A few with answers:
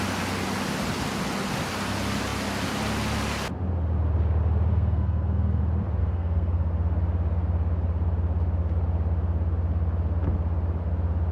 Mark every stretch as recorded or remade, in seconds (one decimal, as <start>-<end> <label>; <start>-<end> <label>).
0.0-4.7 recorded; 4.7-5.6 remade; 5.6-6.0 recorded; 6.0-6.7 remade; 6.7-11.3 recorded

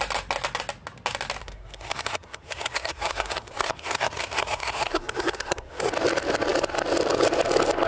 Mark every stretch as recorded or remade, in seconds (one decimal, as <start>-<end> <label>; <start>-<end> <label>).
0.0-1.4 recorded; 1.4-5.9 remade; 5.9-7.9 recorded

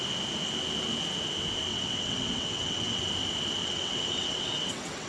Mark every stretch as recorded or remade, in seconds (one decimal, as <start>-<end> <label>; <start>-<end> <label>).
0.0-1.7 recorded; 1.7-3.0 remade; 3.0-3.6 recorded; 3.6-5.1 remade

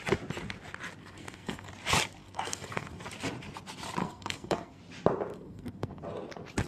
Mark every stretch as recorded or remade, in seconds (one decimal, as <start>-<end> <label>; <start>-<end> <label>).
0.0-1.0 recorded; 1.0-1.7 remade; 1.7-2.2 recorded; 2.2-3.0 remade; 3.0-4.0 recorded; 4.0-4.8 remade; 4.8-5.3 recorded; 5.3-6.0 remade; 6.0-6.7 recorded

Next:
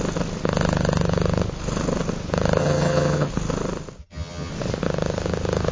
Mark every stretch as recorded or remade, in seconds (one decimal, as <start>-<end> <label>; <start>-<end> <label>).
0.0-2.6 recorded; 2.6-3.3 remade; 3.3-4.0 recorded; 4.0-4.5 remade; 4.5-5.7 recorded

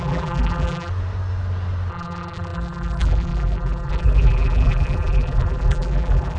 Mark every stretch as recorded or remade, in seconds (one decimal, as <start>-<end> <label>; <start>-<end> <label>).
0.0-0.9 remade; 0.9-1.9 recorded; 1.9-6.4 remade